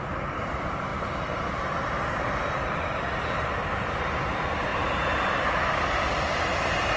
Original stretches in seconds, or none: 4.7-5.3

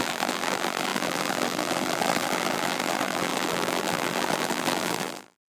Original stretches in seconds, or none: none

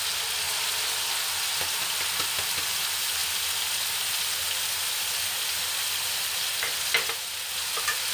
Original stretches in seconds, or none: 0.0-8.1

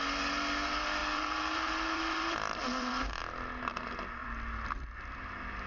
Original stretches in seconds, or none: 0.0-1.0; 3.2-4.2; 5.2-5.7

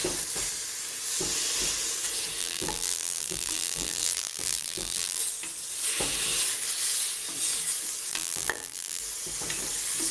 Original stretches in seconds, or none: 0.0-2.4; 5.2-8.1; 9.0-10.1

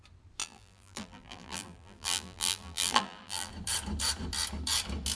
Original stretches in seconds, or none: 0.0-0.4; 3.5-5.2